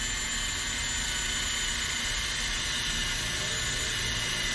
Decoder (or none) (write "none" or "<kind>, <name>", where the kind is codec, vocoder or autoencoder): none